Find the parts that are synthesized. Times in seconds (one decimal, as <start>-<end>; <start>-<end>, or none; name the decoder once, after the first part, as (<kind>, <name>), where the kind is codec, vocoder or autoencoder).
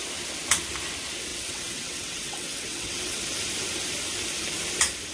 1.3-3.2 (vocoder, WaveNeXt)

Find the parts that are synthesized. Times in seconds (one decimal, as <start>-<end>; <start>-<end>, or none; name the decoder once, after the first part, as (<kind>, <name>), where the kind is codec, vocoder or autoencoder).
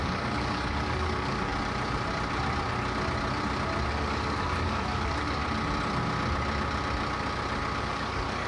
0.0-1.5 (codec, DAC); 3.9-5.4; 7.8-8.5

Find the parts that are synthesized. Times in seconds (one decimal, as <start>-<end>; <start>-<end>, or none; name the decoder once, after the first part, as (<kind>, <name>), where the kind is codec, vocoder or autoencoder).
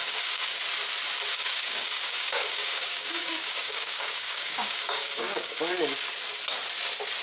0.0-0.6 (codec, DAC); 1.3-5.6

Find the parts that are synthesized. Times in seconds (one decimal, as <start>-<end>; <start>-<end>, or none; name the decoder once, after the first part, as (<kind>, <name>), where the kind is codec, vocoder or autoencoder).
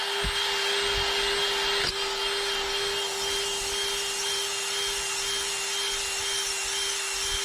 none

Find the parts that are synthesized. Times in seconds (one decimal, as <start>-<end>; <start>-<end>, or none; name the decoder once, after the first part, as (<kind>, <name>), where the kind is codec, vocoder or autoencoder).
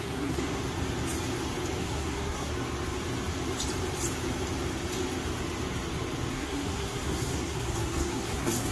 0.0-0.6 (codec, SNAC); 1.8-2.5; 6.3-8.7